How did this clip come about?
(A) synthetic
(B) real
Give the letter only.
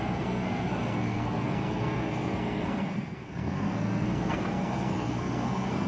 A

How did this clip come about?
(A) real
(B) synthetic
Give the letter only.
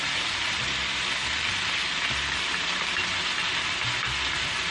A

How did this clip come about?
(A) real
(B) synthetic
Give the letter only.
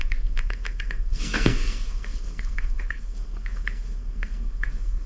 B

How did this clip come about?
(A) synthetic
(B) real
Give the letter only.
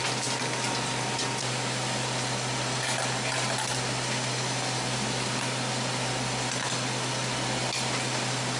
B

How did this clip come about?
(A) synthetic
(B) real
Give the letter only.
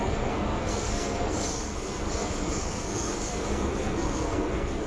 A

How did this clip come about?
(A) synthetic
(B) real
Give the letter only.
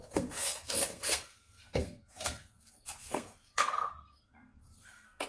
A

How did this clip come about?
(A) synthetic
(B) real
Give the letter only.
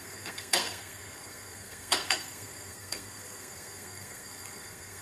A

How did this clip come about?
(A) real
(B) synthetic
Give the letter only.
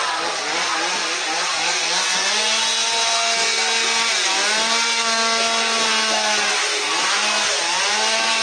A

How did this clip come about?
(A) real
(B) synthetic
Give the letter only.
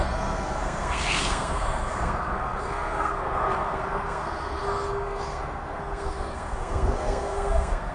B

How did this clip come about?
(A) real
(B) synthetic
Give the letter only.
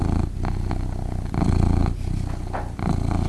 A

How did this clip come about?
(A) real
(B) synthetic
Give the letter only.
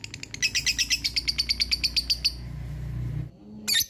A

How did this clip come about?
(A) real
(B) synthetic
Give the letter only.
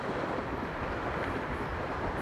A